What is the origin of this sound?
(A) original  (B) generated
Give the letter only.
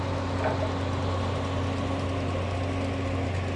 A